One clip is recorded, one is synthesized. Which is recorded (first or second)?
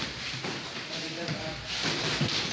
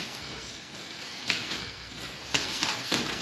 first